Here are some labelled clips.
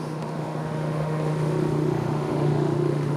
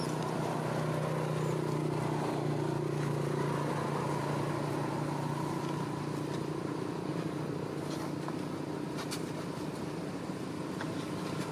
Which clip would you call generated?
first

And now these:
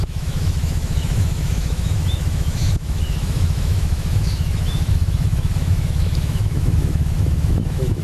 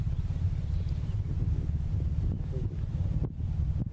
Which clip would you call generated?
first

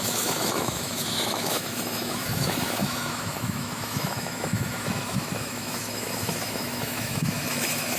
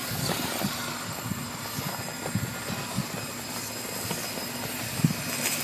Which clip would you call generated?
first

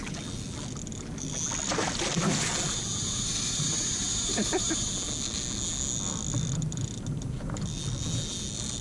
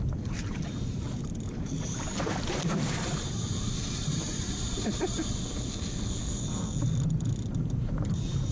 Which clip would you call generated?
second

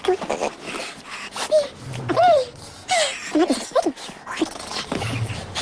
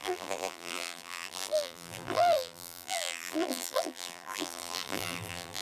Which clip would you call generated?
second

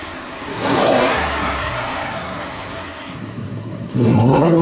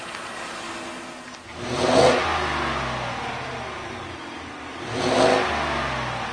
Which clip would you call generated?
first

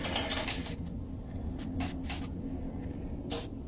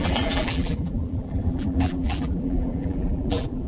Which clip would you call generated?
second